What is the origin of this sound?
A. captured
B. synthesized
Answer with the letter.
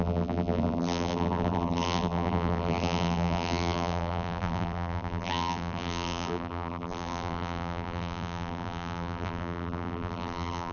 B